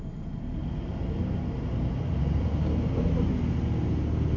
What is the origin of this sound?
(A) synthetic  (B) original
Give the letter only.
B